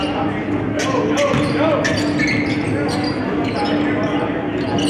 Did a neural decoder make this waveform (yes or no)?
no